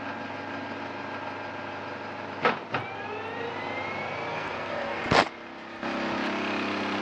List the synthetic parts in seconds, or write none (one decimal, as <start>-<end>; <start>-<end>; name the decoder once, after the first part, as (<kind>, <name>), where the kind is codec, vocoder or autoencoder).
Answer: 4.3-5.0 (codec, SNAC)